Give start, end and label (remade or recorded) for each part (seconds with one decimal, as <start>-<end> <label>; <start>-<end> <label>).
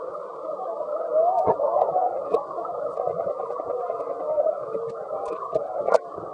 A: 0.0-6.3 recorded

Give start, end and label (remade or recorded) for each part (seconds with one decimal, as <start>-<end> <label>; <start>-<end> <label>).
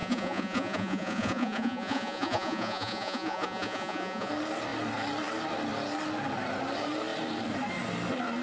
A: 0.0-4.3 remade; 4.3-8.4 recorded